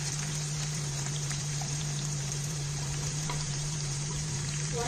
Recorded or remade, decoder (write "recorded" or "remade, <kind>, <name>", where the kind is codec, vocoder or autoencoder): remade, vocoder, BigVGAN v2